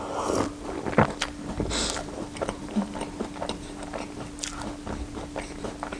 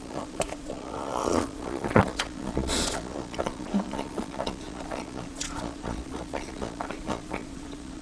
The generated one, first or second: second